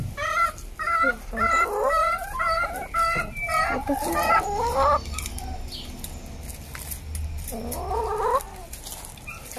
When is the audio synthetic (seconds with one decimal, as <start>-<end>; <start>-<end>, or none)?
none